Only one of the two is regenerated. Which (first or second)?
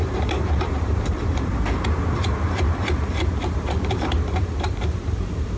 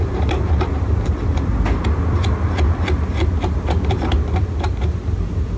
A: first